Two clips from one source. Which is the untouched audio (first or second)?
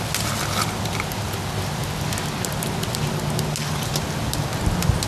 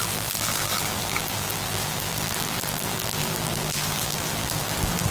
first